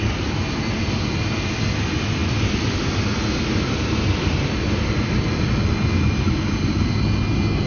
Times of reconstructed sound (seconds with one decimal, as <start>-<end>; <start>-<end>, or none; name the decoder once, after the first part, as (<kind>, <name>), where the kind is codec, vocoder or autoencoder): none